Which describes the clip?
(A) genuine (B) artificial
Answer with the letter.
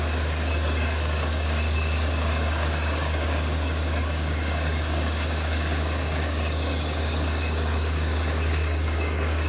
B